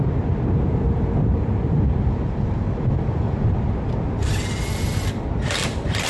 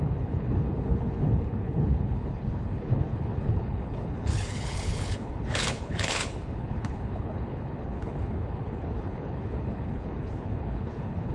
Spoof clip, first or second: second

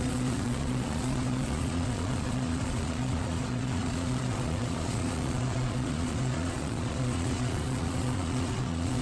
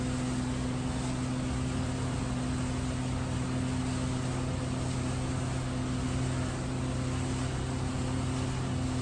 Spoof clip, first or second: first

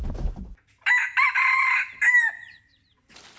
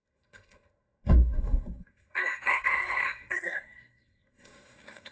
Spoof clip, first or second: second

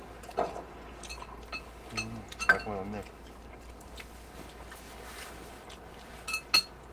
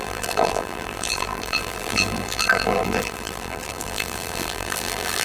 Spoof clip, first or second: second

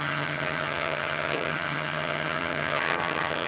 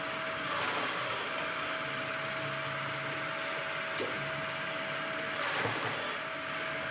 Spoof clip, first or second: first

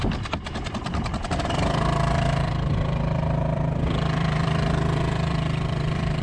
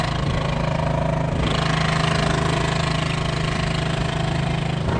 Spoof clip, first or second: first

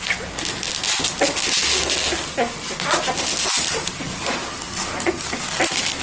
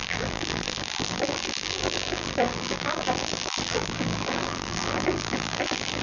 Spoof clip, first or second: second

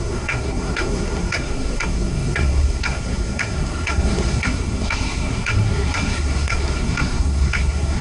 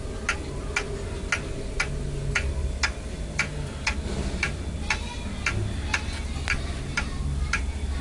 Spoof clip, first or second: first